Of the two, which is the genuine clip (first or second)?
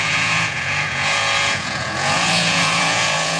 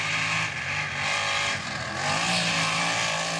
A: second